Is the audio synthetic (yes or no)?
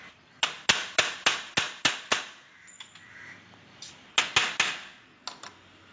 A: no